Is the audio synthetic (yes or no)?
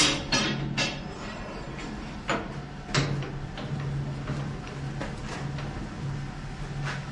no